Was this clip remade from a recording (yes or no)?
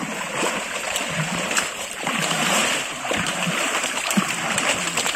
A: yes